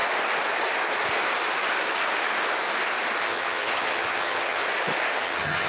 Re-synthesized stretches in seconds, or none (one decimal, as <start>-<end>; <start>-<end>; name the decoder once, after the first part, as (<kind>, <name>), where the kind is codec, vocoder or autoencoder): 3.2-4.6 (vocoder, HiFi-GAN); 5.2-5.7